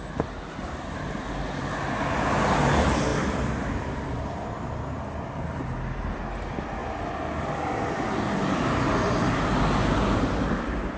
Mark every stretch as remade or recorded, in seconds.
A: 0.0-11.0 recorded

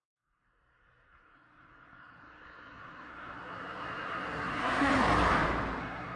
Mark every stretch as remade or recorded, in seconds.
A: 0.0-4.9 remade; 4.9-5.8 recorded; 5.8-6.2 remade